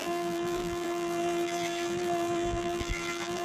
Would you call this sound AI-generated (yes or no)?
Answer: yes